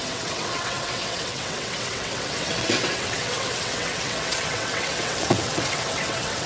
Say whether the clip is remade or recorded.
remade